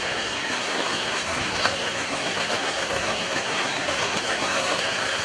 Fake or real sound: fake